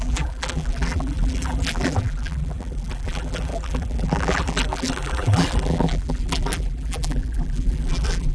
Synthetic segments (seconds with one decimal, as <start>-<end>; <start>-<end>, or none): 0.0-8.3